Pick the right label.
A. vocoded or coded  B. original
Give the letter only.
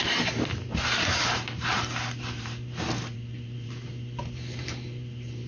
A